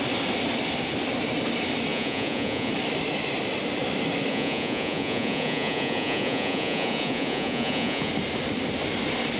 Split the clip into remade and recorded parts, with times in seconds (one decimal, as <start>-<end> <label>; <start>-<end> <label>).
0.0-1.9 recorded; 1.9-2.7 remade; 2.7-4.3 recorded; 4.3-8.1 remade; 8.1-9.4 recorded